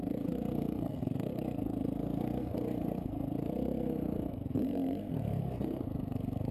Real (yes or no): no